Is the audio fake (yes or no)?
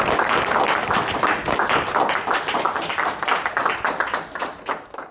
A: no